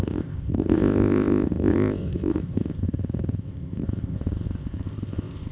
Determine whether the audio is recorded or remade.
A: remade